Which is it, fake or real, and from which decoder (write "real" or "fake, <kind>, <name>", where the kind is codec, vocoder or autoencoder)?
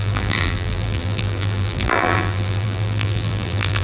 fake, vocoder, BigVGAN v2